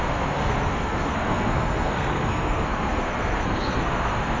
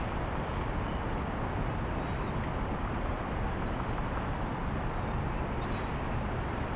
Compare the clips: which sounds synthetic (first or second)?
first